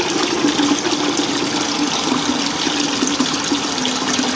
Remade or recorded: recorded